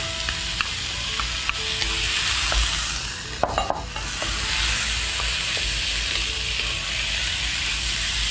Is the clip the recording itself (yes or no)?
yes